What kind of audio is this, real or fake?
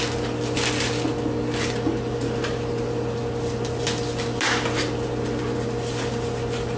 real